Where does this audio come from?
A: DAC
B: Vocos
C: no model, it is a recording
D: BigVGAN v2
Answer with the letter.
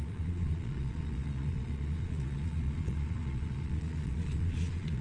B